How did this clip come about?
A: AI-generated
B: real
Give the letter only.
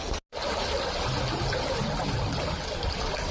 B